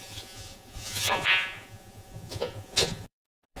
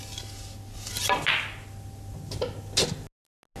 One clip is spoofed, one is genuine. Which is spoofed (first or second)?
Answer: first